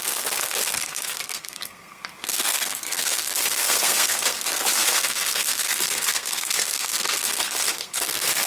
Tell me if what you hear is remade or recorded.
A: remade